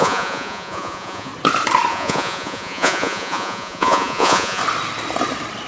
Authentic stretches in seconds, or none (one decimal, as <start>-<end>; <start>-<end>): 1.3-1.9; 4.6-5.7

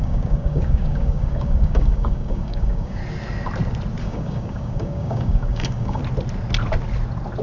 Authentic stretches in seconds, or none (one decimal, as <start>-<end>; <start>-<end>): 3.0-4.0; 6.0-7.4

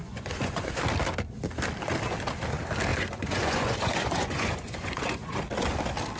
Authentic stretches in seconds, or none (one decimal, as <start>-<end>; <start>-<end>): 0.8-2.9; 5.4-6.2

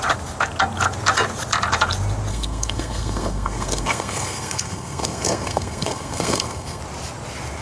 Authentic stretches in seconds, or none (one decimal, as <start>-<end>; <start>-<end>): 0.0-2.3; 6.8-7.6

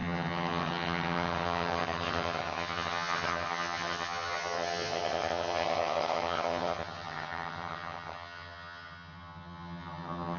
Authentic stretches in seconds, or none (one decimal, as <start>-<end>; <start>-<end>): none